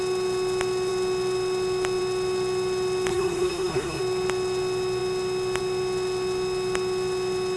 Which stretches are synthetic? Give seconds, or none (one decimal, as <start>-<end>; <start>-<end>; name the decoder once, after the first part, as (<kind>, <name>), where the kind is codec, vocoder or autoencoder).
3.1-4.0 (codec, SNAC)